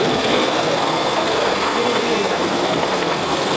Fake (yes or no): yes